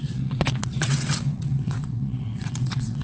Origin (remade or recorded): remade